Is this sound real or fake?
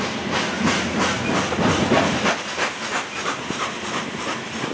real